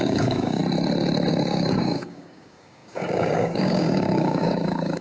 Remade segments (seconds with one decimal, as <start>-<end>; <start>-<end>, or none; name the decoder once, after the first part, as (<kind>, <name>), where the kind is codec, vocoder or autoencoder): 0.0-0.6 (codec, DAC); 1.3-5.0